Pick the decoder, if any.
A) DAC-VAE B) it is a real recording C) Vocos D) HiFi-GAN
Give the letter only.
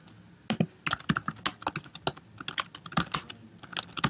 B